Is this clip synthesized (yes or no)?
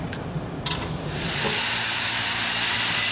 no